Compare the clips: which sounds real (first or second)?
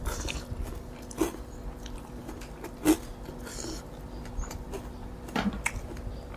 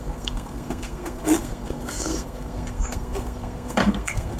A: first